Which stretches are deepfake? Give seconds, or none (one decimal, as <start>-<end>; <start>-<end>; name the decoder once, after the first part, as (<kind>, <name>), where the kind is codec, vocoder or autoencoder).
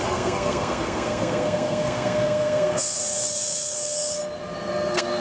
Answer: 0.0-4.2 (codec, SNAC); 4.7-5.2